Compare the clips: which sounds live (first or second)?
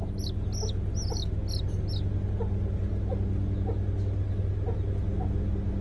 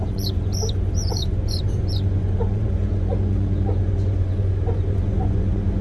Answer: first